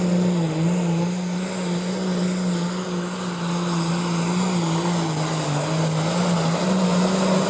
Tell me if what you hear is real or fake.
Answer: real